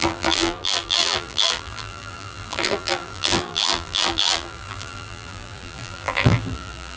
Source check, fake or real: fake